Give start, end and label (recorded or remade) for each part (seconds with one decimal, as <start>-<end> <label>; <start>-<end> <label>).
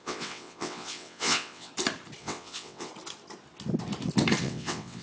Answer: 0.0-1.7 remade; 1.7-2.2 recorded; 2.2-2.9 remade; 2.9-4.4 recorded; 4.4-5.0 remade